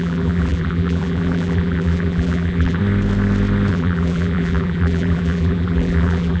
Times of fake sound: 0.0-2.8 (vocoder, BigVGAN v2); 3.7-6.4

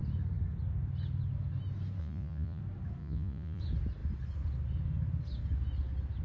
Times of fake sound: 2.0-2.6 (vocoder, Vocos); 3.0-3.6

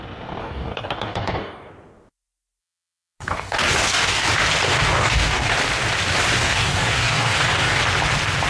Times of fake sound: 0.4-1.7 (codec, DAC); 2.6-4.3; 4.7-5.5; 6.4-7.8